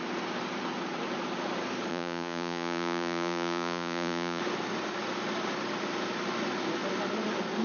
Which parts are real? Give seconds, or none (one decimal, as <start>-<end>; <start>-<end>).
0.0-1.9; 4.4-7.6